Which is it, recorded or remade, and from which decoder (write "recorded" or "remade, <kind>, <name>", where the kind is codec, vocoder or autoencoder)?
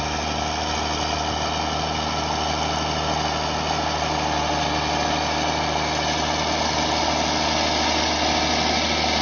recorded